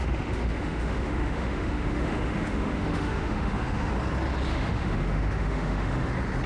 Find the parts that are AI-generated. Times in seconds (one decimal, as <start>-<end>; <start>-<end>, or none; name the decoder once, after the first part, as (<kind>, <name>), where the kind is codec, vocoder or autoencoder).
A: 0.0-3.9 (autoencoder, DAC-VAE); 4.5-6.1